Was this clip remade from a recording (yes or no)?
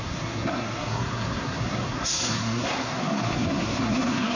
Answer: yes